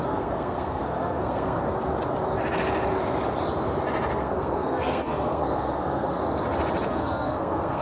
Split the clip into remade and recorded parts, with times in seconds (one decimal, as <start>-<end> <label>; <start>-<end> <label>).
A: 0.0-1.6 remade; 1.6-4.1 recorded; 4.1-6.2 remade; 6.2-6.9 recorded; 6.9-7.8 remade